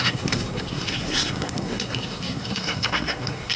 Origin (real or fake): fake